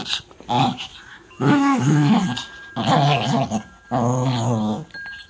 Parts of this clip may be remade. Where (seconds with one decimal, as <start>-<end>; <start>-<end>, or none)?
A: 1.1-2.2